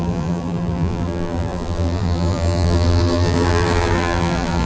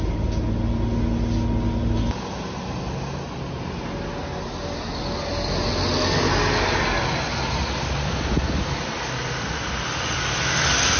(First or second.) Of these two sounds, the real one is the second